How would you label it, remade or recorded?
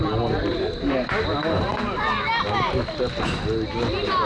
recorded